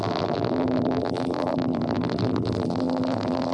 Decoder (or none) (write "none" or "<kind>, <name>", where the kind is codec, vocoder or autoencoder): vocoder, BigVGAN v2